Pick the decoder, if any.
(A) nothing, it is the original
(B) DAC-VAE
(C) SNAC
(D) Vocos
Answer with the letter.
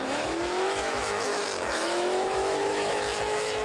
B